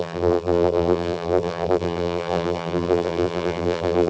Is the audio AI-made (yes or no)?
yes